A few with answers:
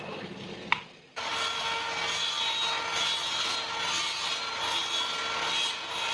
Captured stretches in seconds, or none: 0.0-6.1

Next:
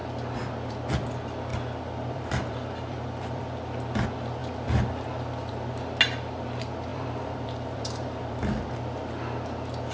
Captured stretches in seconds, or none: 0.0-1.5; 3.4-4.4; 5.5-6.9; 8.7-9.9

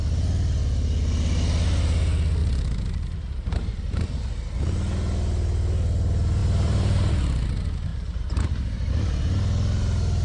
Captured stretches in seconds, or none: 0.0-2.4; 4.2-6.4; 7.1-7.9; 9.0-10.2

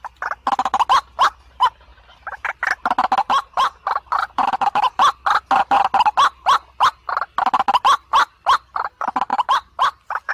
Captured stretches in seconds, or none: 0.0-1.9; 2.6-3.2; 4.9-9.3